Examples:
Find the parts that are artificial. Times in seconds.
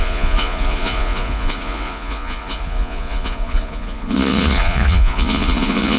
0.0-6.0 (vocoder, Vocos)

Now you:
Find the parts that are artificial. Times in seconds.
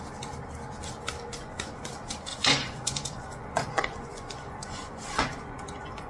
1.4-1.9 (vocoder, Vocos); 2.3-6.1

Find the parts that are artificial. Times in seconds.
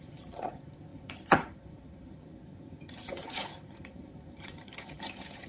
0.0-5.5 (vocoder, HiFi-GAN)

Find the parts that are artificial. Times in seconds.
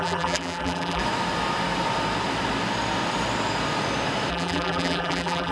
0.0-1.0 (vocoder, BigVGAN v2); 4.3-5.5